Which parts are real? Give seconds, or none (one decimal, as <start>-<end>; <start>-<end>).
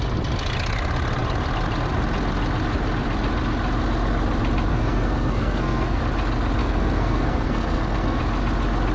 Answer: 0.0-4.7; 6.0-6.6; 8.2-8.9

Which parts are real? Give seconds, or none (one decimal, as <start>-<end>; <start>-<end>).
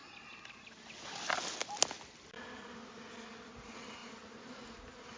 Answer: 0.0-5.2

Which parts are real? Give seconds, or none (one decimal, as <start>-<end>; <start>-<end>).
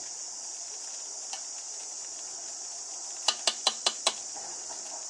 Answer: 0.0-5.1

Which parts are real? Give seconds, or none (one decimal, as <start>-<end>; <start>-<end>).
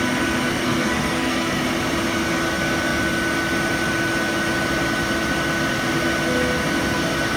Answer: 0.0-0.5; 1.6-7.4